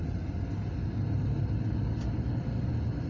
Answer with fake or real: real